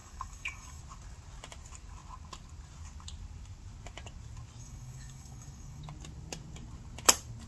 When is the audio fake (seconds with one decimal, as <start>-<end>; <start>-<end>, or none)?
0.0-0.8; 4.6-5.8